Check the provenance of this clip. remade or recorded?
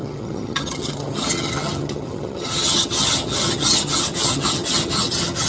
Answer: remade